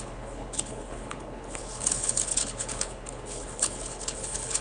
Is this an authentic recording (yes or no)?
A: no